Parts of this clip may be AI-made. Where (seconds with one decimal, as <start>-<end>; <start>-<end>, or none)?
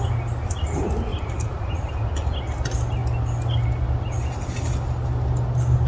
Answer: 1.1-1.9